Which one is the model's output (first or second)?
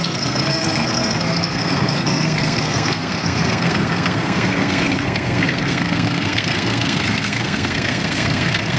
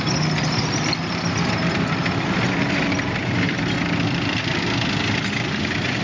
first